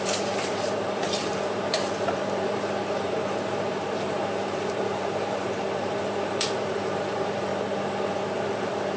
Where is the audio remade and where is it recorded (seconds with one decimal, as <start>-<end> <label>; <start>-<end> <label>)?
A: 0.0-7.5 remade; 7.5-8.1 recorded; 8.1-9.0 remade